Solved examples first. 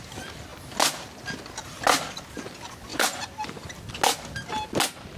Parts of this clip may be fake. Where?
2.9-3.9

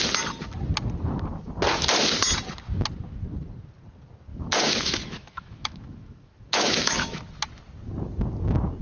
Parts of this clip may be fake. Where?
4.3-7.2

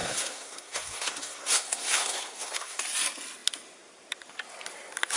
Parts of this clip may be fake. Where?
0.0-2.8

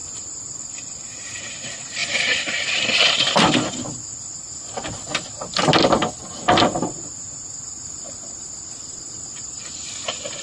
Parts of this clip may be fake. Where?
none

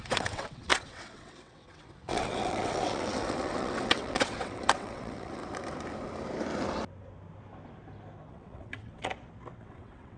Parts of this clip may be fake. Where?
0.0-5.4; 8.3-9.1; 9.6-10.2

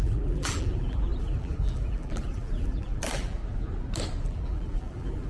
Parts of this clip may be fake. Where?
0.0-3.4; 4.2-5.3